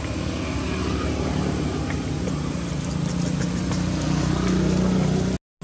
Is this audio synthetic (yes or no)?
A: no